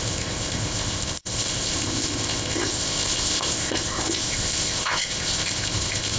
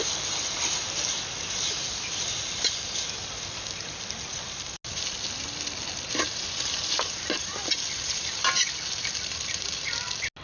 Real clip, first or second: second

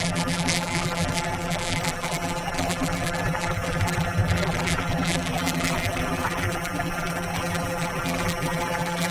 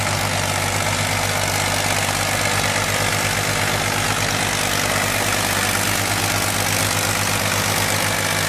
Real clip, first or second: second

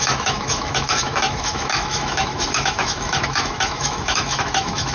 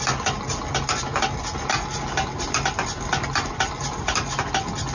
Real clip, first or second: second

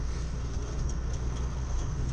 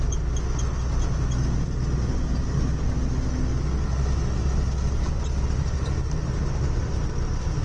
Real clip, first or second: second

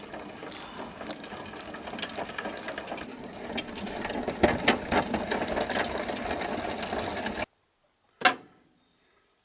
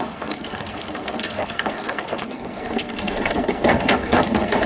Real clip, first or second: first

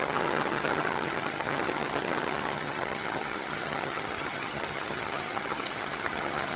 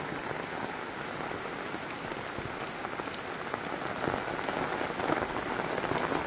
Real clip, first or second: second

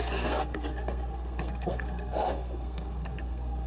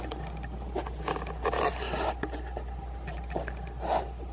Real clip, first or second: second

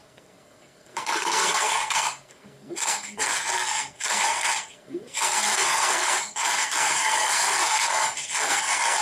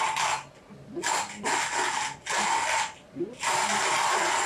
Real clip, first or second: second